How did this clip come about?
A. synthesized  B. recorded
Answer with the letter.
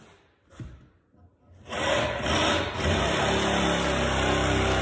B